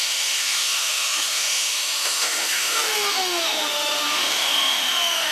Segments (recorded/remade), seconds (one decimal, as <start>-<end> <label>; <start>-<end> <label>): 0.0-5.3 remade